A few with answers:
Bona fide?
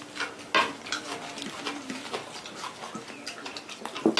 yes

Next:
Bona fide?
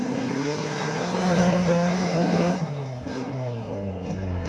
no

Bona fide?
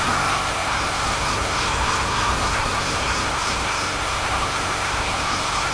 no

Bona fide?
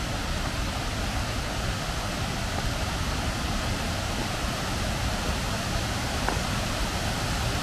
yes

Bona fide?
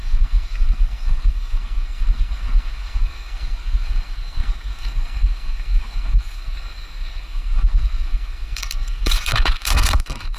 no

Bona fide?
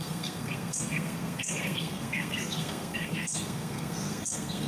no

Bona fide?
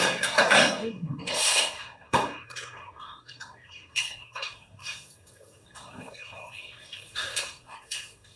no